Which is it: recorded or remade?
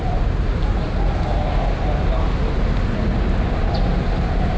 recorded